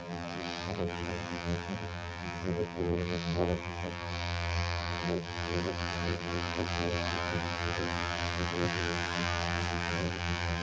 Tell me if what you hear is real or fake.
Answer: fake